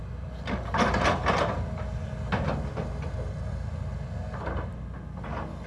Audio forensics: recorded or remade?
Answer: recorded